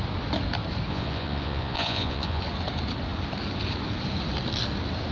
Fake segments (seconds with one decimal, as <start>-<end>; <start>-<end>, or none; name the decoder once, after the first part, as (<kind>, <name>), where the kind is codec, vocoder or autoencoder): 0.9-2.4 (vocoder, Vocos)